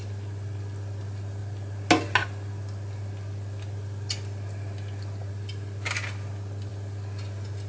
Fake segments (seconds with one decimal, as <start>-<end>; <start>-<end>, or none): none